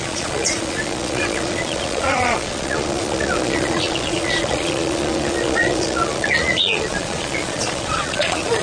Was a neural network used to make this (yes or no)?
yes